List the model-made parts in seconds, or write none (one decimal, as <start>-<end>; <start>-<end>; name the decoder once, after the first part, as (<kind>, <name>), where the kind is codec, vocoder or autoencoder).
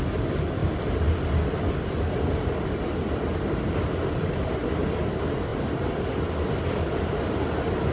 none